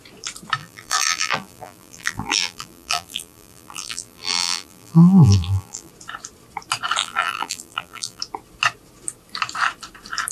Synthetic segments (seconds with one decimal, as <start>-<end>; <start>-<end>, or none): 0.6-5.9; 7.0-8.2